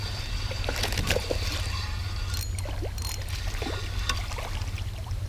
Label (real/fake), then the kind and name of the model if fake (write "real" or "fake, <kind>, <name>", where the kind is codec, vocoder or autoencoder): real